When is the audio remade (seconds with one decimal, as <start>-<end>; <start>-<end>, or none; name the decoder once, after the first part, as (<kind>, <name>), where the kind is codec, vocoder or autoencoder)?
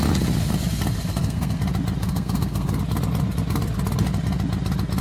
1.1-1.6 (codec, SNAC); 2.0-2.8